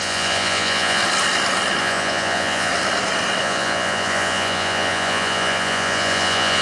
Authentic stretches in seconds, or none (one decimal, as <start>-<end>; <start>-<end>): 1.0-1.8; 2.7-3.4